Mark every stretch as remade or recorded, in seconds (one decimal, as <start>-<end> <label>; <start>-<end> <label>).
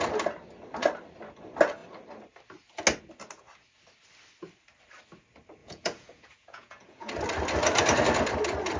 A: 0.0-5.6 recorded; 5.6-7.1 remade; 7.1-8.8 recorded